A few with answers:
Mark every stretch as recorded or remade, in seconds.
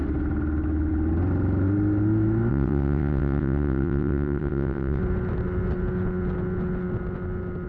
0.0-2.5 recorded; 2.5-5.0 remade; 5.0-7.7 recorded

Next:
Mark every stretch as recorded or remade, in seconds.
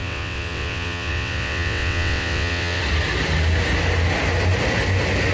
0.0-2.8 remade; 2.8-5.3 recorded